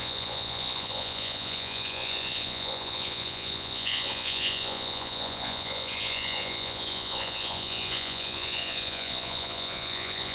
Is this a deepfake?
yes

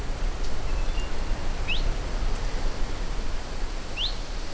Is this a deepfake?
no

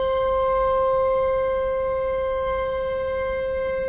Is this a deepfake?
no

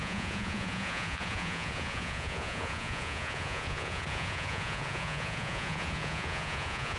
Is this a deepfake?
yes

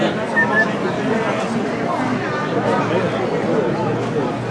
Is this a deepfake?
no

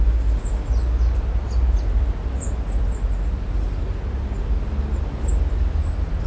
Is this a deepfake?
no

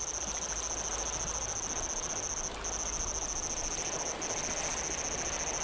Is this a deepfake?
no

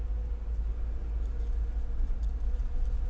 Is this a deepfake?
no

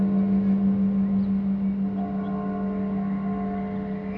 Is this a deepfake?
no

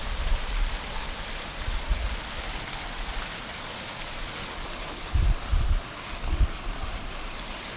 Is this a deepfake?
no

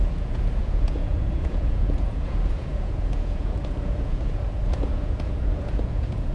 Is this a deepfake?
yes